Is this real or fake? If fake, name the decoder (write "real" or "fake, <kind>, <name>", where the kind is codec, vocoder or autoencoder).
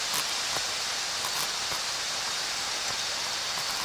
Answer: real